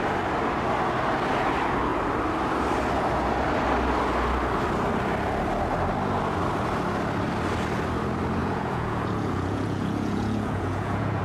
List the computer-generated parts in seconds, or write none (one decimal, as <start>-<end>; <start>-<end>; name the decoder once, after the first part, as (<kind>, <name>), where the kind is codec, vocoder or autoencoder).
8.4-11.2 (vocoder, Vocos)